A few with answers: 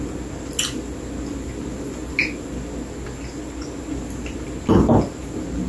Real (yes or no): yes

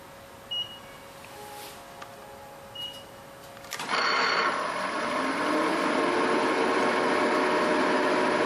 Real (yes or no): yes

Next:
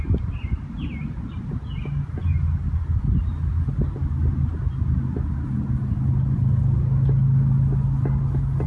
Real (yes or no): yes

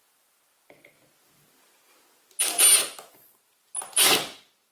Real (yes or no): yes